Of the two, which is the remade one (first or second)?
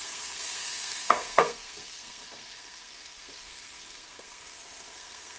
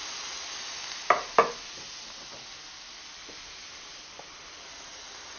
first